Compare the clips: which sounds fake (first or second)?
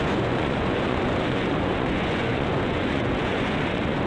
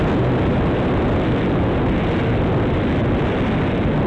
first